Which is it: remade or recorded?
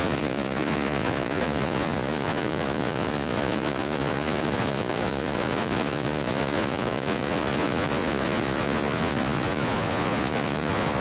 remade